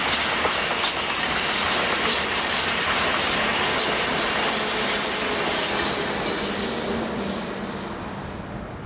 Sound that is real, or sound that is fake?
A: real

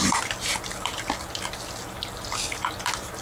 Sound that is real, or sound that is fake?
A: real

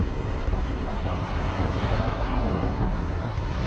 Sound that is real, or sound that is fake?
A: fake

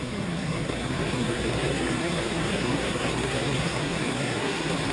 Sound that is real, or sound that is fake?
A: fake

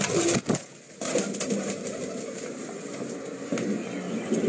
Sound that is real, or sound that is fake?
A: real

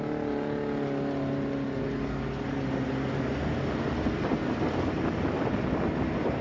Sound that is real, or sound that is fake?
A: real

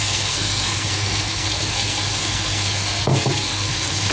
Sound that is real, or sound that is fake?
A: fake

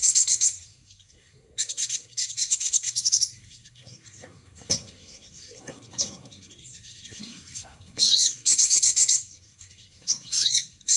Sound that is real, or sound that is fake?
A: fake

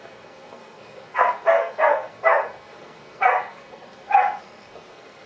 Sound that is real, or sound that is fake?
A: fake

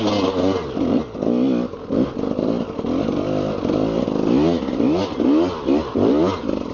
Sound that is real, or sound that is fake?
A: real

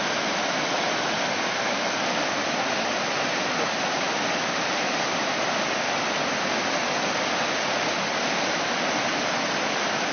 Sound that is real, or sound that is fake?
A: real